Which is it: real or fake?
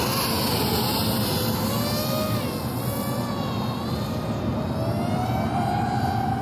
real